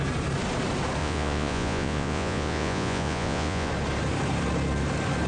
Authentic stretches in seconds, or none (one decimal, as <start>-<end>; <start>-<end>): 0.0-1.0; 3.7-5.3

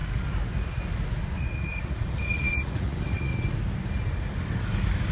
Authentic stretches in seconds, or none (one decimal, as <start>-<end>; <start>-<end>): 0.0-1.2; 3.3-5.1

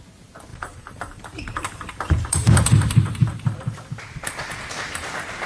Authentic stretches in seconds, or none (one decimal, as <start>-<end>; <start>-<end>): 0.0-0.5; 3.6-5.5